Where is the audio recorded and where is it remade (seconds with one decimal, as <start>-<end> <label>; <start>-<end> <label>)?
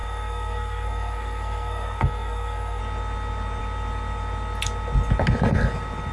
0.0-2.8 remade; 2.8-6.1 recorded